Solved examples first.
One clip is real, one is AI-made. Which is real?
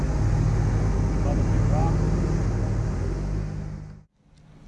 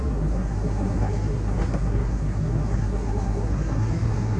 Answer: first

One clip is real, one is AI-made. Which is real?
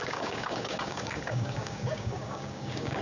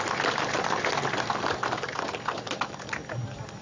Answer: second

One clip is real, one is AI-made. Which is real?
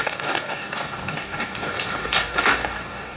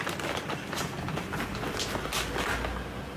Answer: second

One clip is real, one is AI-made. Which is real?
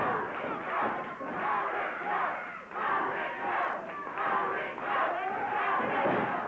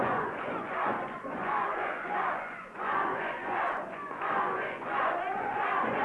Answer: first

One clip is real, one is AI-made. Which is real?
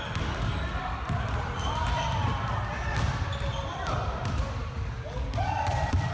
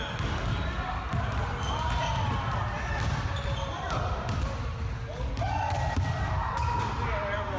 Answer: second